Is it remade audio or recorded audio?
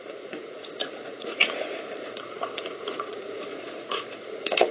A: remade